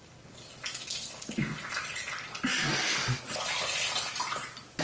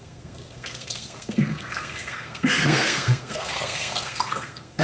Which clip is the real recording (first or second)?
first